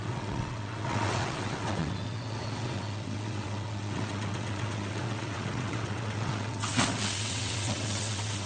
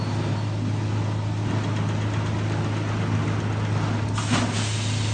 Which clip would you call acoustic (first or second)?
second